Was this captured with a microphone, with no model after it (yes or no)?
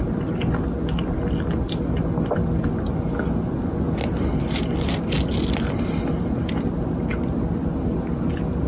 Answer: yes